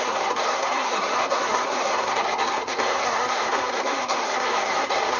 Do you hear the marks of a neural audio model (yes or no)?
yes